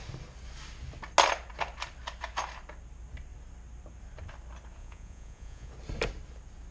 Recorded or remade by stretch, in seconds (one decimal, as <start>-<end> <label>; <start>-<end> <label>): 0.0-4.8 recorded; 4.8-5.7 remade; 5.7-6.7 recorded